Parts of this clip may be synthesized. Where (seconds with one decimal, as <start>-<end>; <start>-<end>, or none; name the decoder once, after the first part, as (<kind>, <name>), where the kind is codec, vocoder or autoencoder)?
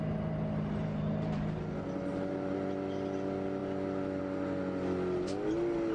none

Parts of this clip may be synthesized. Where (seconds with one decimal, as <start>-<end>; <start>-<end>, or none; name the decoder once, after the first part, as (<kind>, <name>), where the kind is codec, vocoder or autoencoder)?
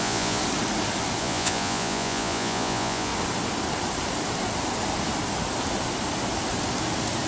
0.0-0.4 (vocoder, Vocos); 1.2-3.1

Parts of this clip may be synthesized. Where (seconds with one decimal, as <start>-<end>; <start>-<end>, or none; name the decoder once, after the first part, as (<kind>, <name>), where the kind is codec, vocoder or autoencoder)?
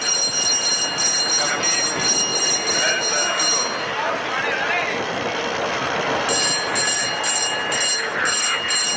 none